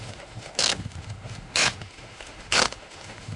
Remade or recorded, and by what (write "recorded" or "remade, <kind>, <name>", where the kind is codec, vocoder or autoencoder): remade, autoencoder, DAC-VAE